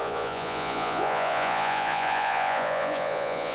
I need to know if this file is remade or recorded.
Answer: remade